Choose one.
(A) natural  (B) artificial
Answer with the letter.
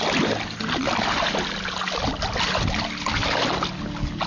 A